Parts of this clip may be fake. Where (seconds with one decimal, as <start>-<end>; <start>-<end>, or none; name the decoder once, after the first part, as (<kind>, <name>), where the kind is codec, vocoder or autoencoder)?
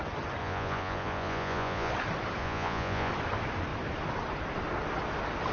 0.4-1.9 (vocoder, Vocos); 2.4-3.1